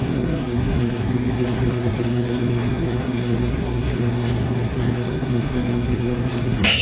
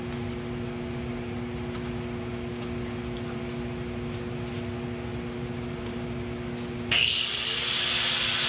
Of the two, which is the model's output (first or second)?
first